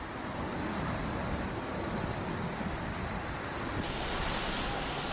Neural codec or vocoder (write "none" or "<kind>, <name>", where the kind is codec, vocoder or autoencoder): none